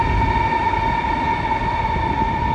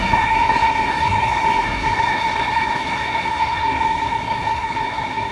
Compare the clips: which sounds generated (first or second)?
second